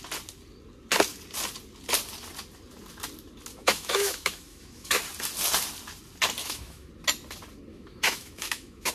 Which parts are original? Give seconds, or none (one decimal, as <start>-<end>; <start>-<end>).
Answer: 0.0-3.5; 5.0-6.4; 6.9-7.7